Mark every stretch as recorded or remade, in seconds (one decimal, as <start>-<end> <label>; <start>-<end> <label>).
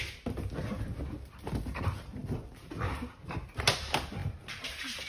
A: 0.0-5.1 recorded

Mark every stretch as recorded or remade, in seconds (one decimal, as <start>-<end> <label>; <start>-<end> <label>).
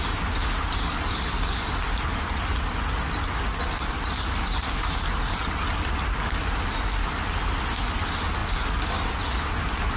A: 0.0-10.0 recorded